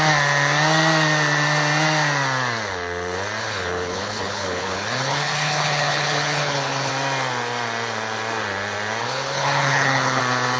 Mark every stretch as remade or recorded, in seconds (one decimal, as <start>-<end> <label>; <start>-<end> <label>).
0.0-3.4 recorded; 3.4-6.9 remade; 6.9-9.0 recorded; 9.0-10.2 remade; 10.2-10.6 recorded